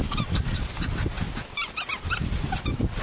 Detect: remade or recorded recorded